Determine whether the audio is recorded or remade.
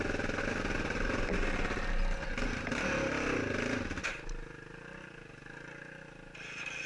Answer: recorded